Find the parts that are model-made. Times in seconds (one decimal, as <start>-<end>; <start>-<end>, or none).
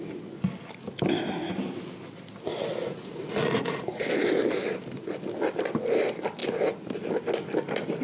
2.5-4.1